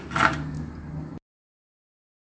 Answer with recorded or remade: recorded